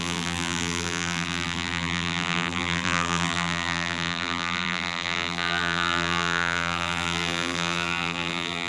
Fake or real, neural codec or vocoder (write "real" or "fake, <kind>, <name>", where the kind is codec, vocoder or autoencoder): fake, vocoder, BigVGAN v2